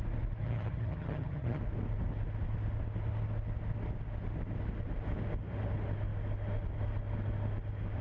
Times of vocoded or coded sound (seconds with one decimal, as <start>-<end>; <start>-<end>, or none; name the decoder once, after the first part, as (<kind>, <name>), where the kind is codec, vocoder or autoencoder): 0.4-1.6 (vocoder, HiFi-GAN)